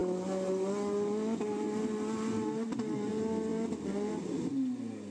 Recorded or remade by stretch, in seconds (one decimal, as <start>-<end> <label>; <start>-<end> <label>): 0.0-5.1 recorded